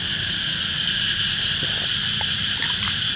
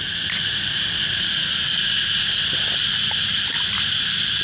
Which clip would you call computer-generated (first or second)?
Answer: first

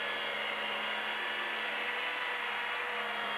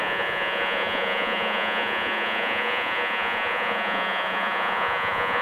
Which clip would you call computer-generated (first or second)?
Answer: second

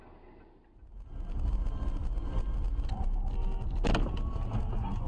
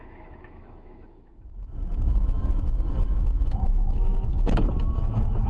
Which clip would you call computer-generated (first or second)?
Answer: second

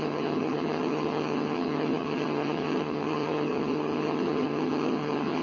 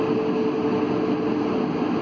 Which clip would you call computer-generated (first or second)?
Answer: first